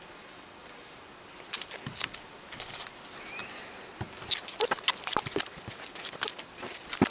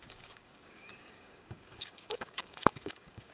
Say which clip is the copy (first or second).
second